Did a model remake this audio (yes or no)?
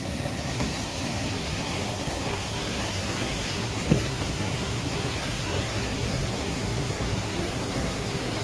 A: yes